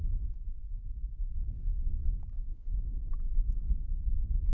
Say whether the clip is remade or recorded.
recorded